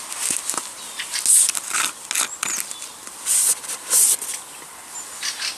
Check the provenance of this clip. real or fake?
real